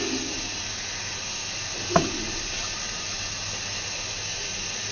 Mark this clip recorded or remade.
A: recorded